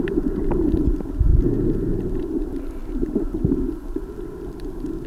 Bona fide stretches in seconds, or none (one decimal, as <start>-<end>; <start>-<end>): 0.0-5.1